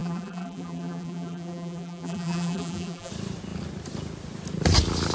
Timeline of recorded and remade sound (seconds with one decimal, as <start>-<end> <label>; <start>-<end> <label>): 0.0-3.1 remade; 3.1-5.1 recorded